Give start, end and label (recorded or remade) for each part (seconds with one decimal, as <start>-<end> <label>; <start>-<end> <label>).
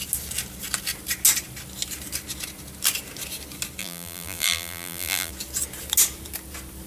0.0-3.8 recorded; 3.8-5.3 remade; 5.3-6.9 recorded